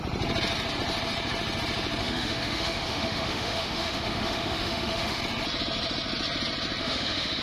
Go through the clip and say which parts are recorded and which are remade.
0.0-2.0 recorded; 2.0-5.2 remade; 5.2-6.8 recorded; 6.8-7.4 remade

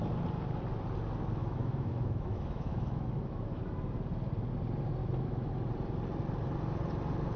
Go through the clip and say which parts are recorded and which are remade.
0.0-1.4 recorded; 1.4-3.6 remade; 3.6-5.0 recorded; 5.0-5.5 remade; 5.5-7.4 recorded

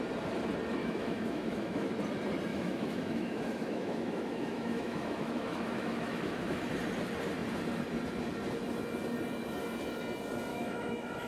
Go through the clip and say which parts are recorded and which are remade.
0.0-0.8 recorded; 0.8-1.9 remade; 1.9-2.5 recorded; 2.5-6.6 remade; 6.6-10.5 recorded; 10.5-11.3 remade

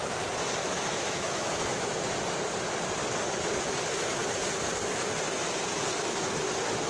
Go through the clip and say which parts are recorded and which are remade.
0.0-0.6 recorded; 0.6-2.0 remade; 2.0-6.9 recorded

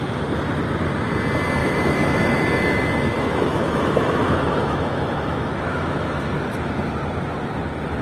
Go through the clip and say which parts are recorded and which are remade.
0.0-1.6 recorded; 1.6-6.3 remade; 6.3-8.0 recorded

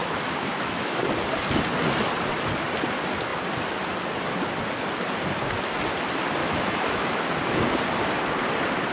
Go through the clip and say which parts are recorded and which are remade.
0.0-1.0 remade; 1.0-6.4 recorded; 6.4-7.2 remade; 7.2-8.9 recorded

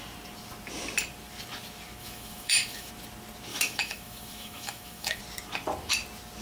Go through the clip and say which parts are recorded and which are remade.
0.0-2.0 recorded; 2.0-2.9 remade; 2.9-3.5 recorded; 3.5-5.2 remade; 5.2-6.4 recorded

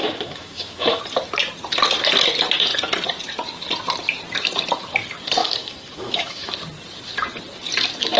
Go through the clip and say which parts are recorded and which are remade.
0.0-1.0 remade; 1.0-5.4 recorded; 5.4-6.5 remade; 6.5-8.2 recorded